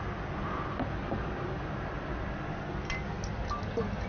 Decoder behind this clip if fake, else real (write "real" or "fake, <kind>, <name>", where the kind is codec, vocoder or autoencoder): real